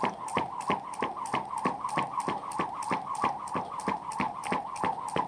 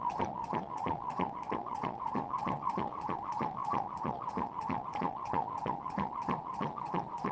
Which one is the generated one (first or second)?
second